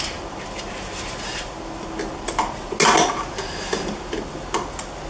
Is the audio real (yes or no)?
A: yes